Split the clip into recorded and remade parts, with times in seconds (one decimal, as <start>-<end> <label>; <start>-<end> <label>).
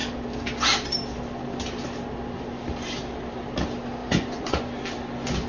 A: 0.0-4.0 recorded; 4.0-4.7 remade; 4.7-5.5 recorded